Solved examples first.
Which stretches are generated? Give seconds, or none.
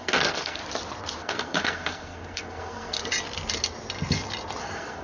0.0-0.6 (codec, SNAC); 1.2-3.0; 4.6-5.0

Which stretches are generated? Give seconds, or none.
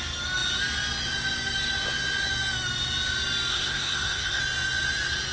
3.5-4.4 (codec, SNAC)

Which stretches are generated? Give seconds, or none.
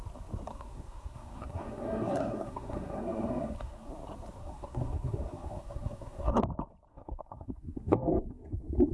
0.5-3.9 (codec, SNAC); 4.4-6.4; 6.9-8.5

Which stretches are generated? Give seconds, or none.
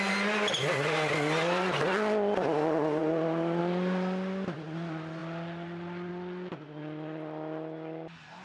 none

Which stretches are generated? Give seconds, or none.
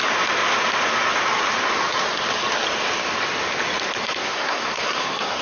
4.0-5.4 (codec, SNAC)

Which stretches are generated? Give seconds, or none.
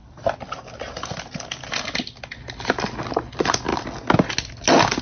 none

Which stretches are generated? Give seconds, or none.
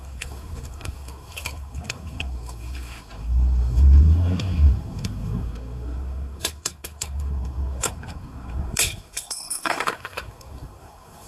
0.0-11.3 (codec, SNAC)